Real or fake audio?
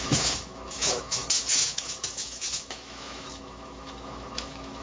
fake